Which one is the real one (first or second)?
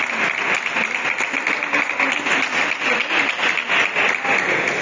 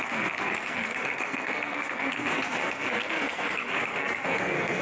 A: first